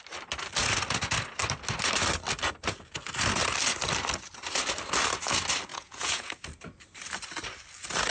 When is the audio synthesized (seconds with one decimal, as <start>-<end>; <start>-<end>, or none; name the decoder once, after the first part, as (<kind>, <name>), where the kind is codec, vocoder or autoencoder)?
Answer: 5.7-6.3 (vocoder, Vocos)